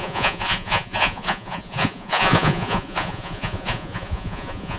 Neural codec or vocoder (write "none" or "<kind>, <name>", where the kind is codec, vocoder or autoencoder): vocoder, Vocos